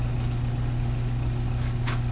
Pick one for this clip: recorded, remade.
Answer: recorded